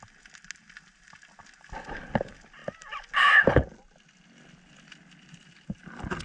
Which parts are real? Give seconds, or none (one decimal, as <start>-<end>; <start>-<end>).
0.0-6.2